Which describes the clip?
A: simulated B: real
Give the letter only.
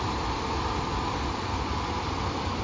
B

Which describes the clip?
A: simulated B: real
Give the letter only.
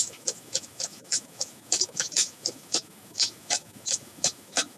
A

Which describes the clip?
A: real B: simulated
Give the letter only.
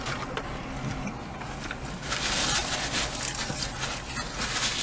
A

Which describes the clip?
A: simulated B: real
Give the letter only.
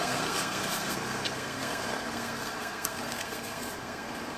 A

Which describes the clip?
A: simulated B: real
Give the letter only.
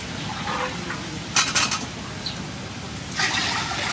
B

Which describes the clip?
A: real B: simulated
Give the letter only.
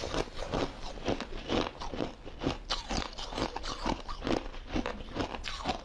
A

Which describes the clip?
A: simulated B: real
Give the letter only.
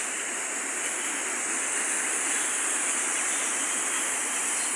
B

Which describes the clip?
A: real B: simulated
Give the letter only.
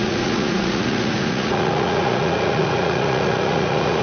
B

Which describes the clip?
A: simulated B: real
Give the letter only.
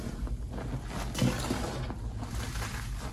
B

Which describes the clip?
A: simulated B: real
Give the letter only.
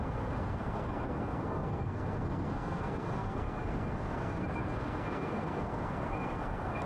A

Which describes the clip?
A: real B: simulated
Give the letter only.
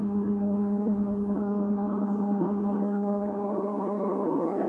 B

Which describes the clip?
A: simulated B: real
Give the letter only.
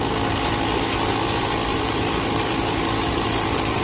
B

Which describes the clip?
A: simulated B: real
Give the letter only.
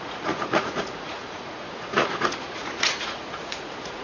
A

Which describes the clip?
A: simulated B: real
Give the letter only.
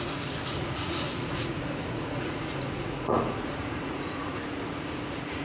A